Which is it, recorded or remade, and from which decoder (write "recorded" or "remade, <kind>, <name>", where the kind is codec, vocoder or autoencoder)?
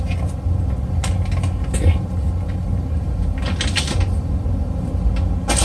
recorded